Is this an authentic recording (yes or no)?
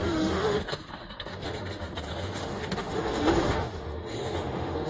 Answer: no